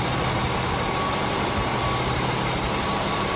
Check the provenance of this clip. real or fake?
real